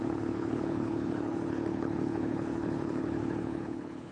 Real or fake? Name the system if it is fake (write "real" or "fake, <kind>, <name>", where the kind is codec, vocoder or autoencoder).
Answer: fake, codec, HILCodec